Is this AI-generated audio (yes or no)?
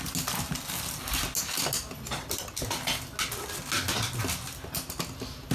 no